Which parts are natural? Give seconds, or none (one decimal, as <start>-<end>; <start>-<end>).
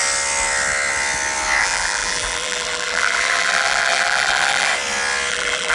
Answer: 0.0-1.6; 4.7-5.3